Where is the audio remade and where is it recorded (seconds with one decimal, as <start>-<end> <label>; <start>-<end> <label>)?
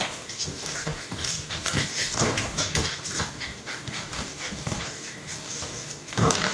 0.0-6.5 remade